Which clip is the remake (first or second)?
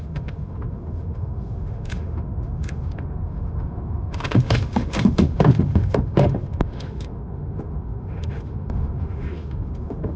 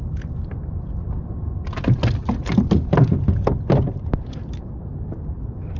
first